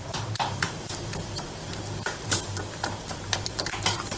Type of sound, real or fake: fake